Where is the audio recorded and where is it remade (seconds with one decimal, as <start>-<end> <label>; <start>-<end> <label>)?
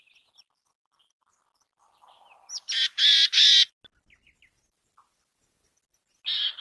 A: 0.0-6.6 recorded